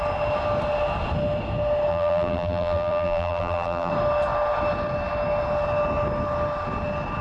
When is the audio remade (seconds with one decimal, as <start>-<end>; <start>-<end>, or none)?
1.9-3.9